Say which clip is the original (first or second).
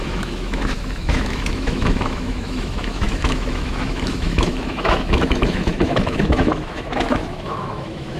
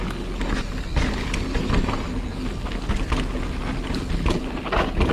second